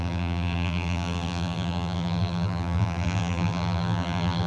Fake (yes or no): yes